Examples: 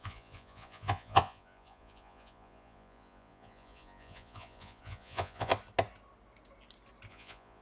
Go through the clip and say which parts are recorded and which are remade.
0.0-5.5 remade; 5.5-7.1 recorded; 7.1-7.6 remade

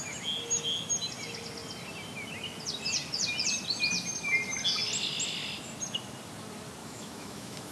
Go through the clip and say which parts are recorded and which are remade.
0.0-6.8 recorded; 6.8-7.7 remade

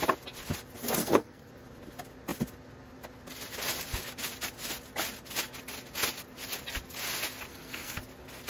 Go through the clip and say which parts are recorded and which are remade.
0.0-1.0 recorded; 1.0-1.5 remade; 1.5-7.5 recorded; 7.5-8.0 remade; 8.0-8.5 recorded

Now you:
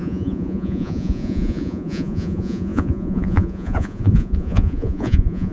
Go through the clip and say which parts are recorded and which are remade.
0.0-5.5 remade

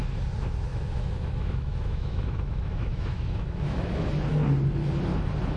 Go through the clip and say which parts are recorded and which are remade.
0.0-0.7 recorded; 0.7-4.1 remade; 4.1-5.6 recorded

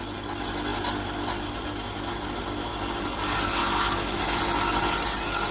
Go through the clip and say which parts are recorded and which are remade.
0.0-5.5 recorded

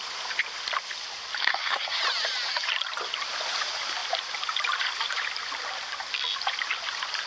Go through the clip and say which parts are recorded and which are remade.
0.0-1.4 recorded; 1.4-2.0 remade; 2.0-7.3 recorded

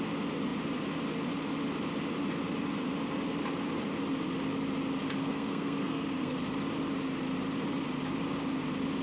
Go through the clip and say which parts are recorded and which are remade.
0.0-5.2 recorded; 5.2-6.3 remade; 6.3-9.0 recorded